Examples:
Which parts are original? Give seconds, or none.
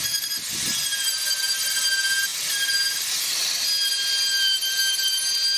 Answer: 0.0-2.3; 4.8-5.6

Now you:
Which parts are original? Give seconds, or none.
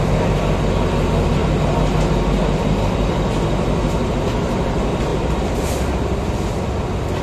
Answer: 0.0-5.1; 5.9-7.2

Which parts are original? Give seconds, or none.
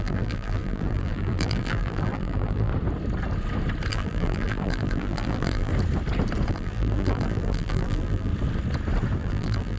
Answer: 2.7-3.9; 5.7-6.5; 8.3-9.2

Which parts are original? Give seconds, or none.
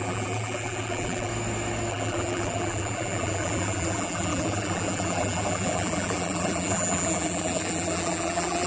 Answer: 1.3-1.9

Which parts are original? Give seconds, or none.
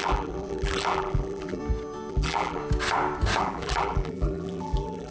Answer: 1.6-2.1; 2.6-3.4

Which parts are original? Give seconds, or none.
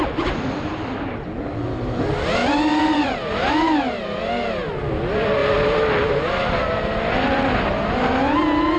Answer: 0.0-2.4; 3.5-8.8